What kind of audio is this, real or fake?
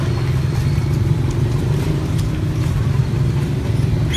real